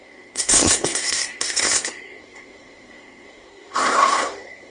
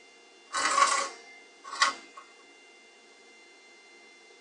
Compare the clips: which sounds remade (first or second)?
first